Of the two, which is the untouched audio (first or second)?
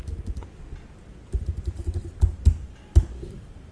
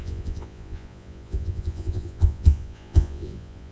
first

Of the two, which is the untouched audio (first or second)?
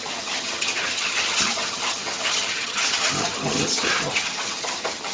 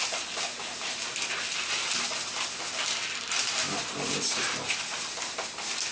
second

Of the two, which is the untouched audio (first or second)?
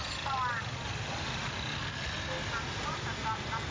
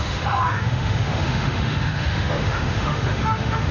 first